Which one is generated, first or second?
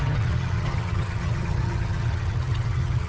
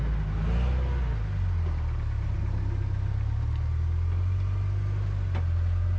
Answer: first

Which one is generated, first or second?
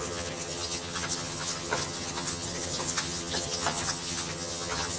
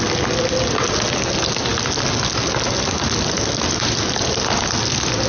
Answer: first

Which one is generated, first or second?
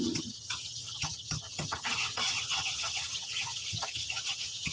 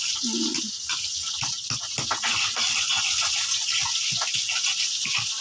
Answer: first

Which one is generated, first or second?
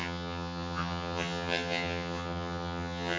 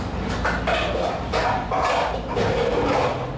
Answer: first